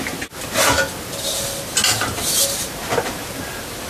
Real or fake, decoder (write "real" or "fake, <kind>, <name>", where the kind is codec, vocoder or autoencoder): real